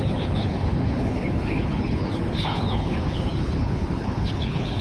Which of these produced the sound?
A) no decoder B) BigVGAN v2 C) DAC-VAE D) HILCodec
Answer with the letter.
D